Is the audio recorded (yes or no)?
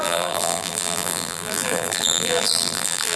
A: no